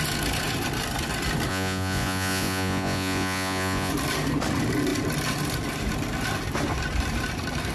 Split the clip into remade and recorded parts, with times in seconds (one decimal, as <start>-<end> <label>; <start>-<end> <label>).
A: 0.0-1.5 recorded; 1.5-3.9 remade; 3.9-7.7 recorded